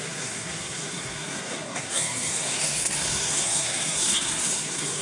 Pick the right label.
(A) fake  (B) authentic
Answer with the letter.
A